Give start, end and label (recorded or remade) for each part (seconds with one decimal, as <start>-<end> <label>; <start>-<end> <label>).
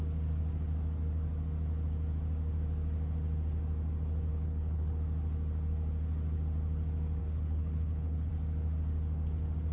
0.0-4.3 recorded; 4.3-5.0 remade; 5.0-7.2 recorded; 7.2-8.3 remade; 8.3-9.7 recorded